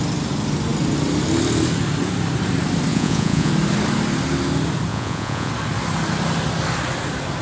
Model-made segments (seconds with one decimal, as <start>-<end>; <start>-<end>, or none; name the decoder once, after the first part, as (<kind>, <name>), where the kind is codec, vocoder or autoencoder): 2.9-3.5 (vocoder, Vocos); 4.9-5.5

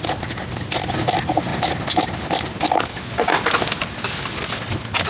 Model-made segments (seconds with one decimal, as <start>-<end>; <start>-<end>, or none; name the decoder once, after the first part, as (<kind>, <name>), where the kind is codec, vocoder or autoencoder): none

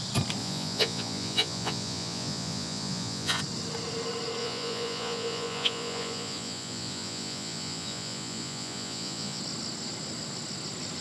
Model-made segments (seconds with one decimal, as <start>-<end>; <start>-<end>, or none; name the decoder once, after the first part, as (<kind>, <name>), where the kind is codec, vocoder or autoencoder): 0.4-3.4 (vocoder, Vocos); 4.4-9.4